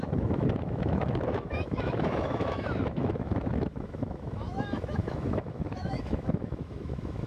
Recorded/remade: remade